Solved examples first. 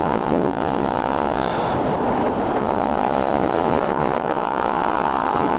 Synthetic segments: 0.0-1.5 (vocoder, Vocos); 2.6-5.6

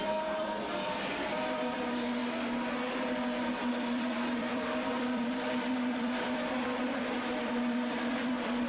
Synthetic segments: 0.0-2.2 (vocoder, BigVGAN v2); 3.7-8.7

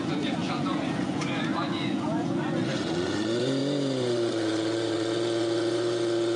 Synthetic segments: 0.0-6.4 (vocoder, Vocos)

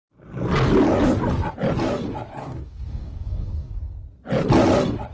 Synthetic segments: 2.4-3.8 (codec, DAC)